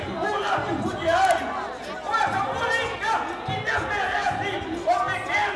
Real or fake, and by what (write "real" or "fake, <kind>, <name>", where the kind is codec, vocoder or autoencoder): real